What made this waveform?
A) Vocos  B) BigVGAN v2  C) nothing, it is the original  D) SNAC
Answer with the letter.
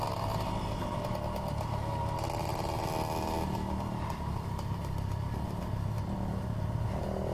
C